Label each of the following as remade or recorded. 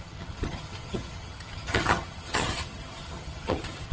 remade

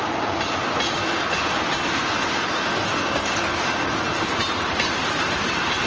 recorded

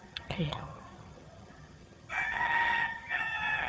remade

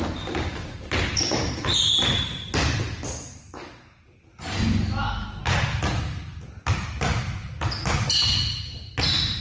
recorded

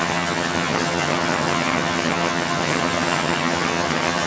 remade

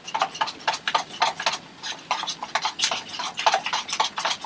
recorded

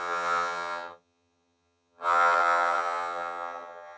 remade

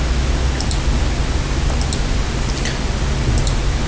recorded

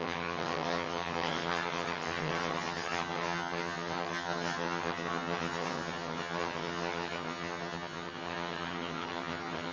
remade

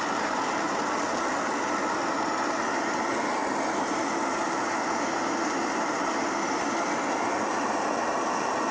recorded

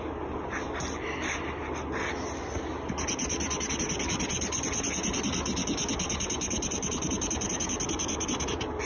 recorded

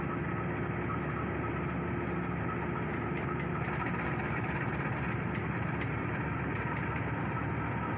recorded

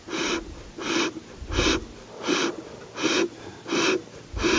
recorded